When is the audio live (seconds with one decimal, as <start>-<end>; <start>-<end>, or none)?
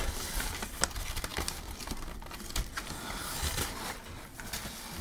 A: 0.0-5.0